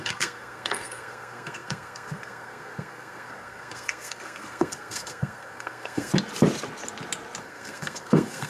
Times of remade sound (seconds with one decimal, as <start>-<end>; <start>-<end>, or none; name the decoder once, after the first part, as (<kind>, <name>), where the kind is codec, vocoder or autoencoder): 0.0-6.1 (codec, SNAC); 7.4-8.5